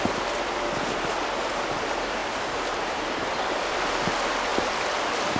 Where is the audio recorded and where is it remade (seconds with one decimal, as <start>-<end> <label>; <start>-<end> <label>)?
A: 0.0-2.2 recorded; 2.2-3.8 remade; 3.8-5.4 recorded

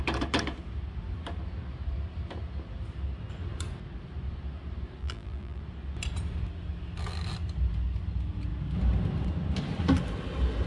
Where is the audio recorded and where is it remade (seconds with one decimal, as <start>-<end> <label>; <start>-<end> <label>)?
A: 0.0-5.0 recorded; 5.0-5.6 remade; 5.6-10.7 recorded